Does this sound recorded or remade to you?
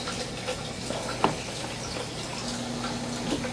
recorded